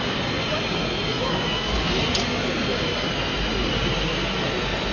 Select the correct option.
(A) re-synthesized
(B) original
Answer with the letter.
B